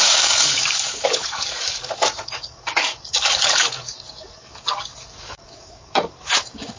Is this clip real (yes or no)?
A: no